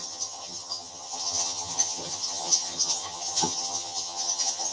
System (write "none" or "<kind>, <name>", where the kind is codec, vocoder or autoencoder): vocoder, HiFi-GAN